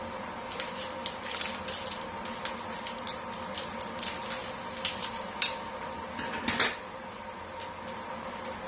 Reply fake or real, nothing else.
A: real